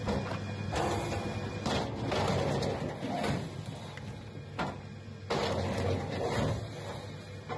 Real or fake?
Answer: real